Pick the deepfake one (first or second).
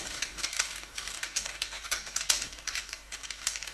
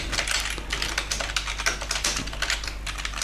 first